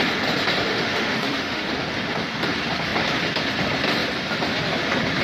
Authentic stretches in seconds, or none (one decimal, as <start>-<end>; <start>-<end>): 0.0-0.7; 1.7-5.2